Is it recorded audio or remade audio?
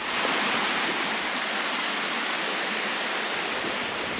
recorded